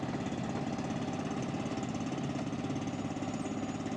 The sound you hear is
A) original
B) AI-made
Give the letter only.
A